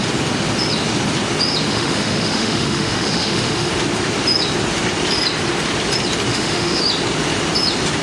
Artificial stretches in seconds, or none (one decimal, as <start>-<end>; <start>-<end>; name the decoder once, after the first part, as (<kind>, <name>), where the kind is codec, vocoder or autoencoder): 1.7-3.7 (autoencoder, DAC-VAE); 6.3-6.8